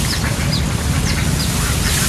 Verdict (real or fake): real